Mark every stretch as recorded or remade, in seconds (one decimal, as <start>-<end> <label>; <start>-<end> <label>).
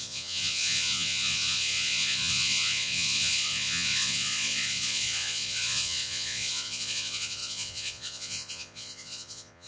0.0-9.7 remade